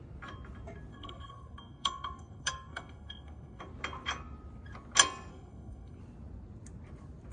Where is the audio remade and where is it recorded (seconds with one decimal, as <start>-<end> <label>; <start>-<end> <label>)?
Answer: 0.0-0.9 recorded; 0.9-3.6 remade; 3.6-5.3 recorded; 5.3-6.0 remade; 6.0-7.3 recorded